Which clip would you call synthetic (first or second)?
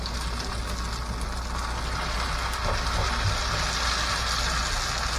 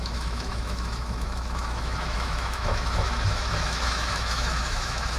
second